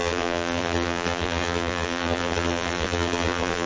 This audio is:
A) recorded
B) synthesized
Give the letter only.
B